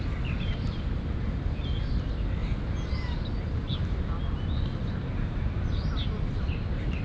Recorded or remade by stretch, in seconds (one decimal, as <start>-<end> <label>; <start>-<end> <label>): 0.0-7.0 recorded